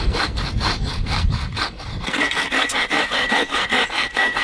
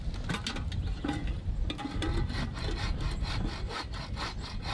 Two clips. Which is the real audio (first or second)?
second